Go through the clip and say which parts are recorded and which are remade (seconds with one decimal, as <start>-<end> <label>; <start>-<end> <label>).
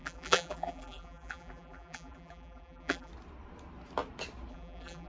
0.0-3.1 remade; 3.1-4.5 recorded; 4.5-5.1 remade